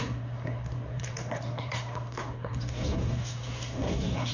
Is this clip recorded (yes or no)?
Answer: no